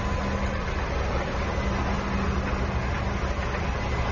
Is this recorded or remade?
recorded